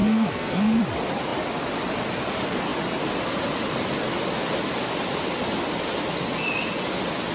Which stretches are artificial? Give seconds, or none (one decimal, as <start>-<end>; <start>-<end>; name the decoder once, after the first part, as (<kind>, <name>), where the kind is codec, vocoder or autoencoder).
0.0-0.8 (codec, SNAC)